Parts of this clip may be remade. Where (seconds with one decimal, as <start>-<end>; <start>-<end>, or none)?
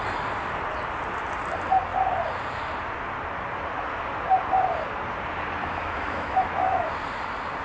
5.6-6.9